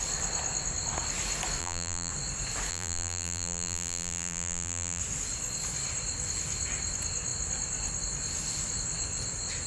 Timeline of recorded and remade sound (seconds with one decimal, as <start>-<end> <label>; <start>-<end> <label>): 0.0-1.6 recorded; 1.6-2.1 remade; 2.1-2.7 recorded; 2.7-5.0 remade; 5.0-9.7 recorded